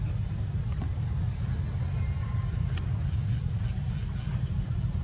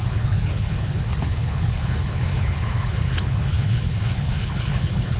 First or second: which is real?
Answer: first